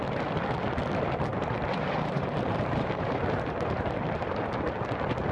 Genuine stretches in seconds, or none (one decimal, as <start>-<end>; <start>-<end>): 0.0-1.3; 4.5-5.3